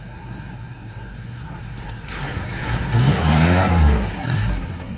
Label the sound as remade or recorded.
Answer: remade